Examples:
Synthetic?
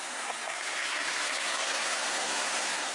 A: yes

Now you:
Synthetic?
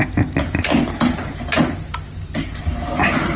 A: no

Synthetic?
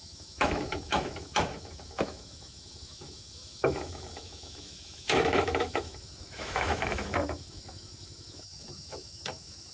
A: yes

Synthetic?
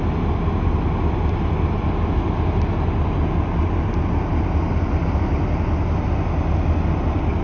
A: no